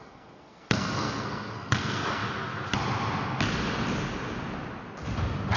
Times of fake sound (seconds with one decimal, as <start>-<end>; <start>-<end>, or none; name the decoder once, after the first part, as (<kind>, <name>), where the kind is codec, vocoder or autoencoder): 0.0-2.2 (codec, SNAC)